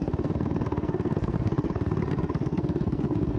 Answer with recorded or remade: remade